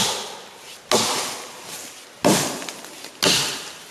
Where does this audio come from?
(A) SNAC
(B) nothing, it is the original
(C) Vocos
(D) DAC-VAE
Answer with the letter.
B